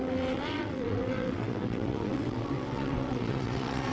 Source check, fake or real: fake